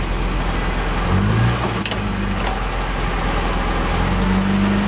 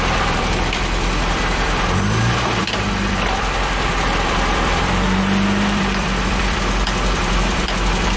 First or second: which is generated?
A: second